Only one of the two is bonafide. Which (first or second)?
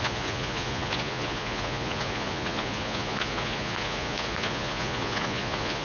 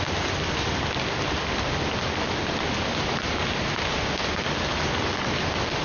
second